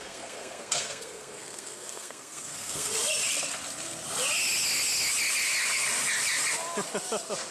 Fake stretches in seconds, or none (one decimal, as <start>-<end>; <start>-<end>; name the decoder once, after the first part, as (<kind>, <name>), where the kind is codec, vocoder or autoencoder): 0.0-2.9 (codec, SNAC)